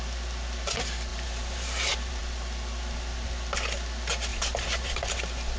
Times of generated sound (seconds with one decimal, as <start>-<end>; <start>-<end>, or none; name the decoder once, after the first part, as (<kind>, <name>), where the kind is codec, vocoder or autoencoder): 1.1-2.2 (vocoder, BigVGAN v2); 4.3-5.1